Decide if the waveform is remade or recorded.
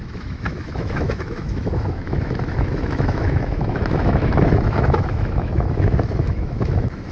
remade